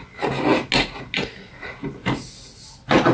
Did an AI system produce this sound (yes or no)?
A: no